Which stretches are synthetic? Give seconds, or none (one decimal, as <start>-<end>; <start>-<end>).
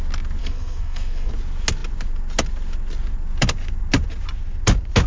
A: 0.4-1.3